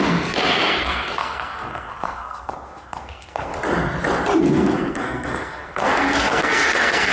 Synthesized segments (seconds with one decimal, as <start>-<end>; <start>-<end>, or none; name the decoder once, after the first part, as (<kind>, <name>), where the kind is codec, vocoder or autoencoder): 0.0-3.5 (codec, SNAC); 4.4-7.1